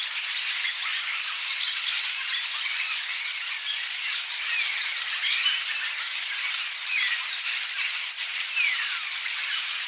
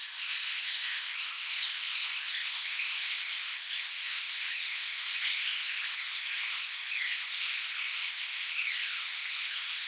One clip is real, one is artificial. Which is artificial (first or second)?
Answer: second